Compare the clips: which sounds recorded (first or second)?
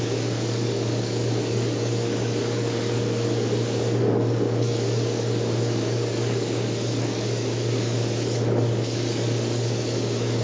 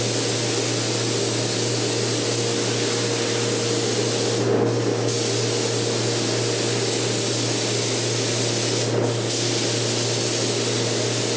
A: second